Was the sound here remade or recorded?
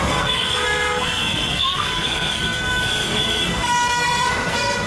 remade